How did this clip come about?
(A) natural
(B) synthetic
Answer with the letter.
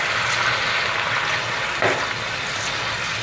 A